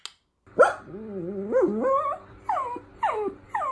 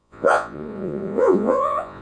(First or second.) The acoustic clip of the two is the first